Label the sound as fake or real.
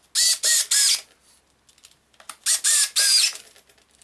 real